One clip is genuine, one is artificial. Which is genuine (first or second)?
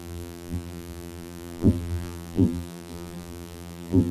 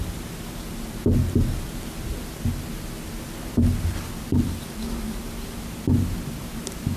second